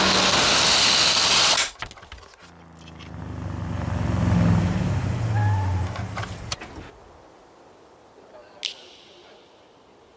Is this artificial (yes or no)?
no